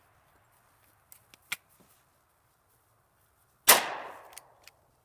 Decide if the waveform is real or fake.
real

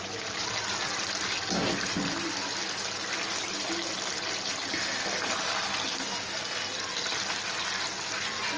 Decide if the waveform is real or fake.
real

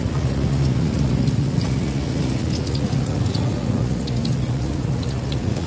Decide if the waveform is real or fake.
fake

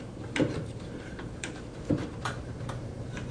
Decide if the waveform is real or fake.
fake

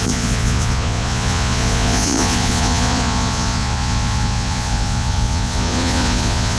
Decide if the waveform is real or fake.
fake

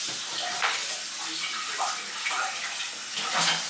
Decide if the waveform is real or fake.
real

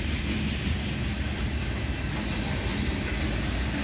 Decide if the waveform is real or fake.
real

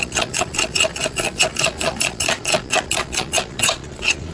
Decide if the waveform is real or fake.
fake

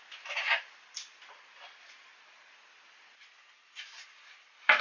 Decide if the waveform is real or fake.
real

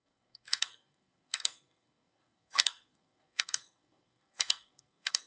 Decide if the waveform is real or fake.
fake